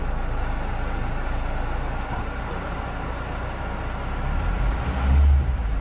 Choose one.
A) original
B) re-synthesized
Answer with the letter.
A